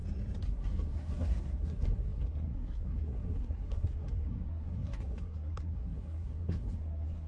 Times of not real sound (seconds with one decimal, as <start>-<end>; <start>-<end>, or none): 0.5-7.3